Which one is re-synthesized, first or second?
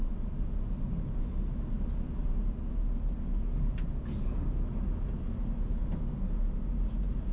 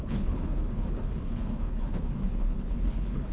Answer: second